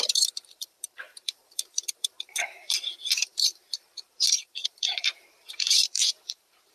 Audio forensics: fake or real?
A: fake